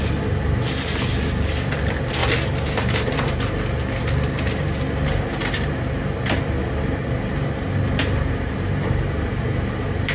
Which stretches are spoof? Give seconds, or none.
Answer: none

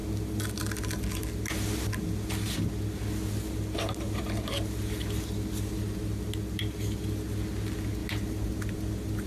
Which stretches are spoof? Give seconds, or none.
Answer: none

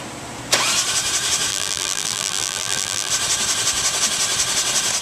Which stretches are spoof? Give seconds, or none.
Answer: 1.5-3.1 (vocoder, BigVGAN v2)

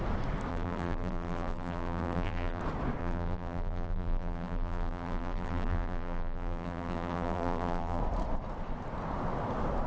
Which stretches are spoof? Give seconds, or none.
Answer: 0.5-2.6 (vocoder, BigVGAN v2); 3.0-8.0

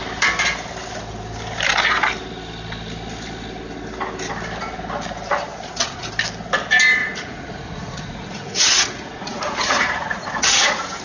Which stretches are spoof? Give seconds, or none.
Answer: 5.5-6.1 (vocoder, Vocos); 7.0-11.0

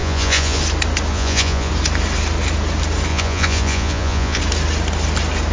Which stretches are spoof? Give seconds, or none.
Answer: 0.0-0.6 (vocoder, Vocos); 1.1-1.7; 3.1-4.4

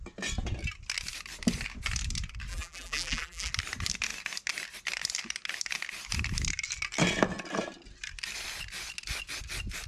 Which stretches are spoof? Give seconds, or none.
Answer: 2.5-3.5 (vocoder, BigVGAN v2)